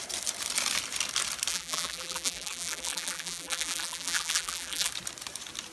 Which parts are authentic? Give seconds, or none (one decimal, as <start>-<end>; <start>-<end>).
0.0-1.5; 4.9-5.7